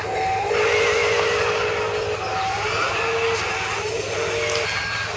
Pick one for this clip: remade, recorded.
recorded